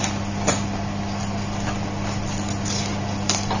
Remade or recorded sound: recorded